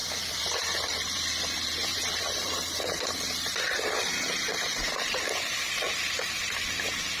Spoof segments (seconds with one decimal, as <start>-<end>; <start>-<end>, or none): 0.0-4.1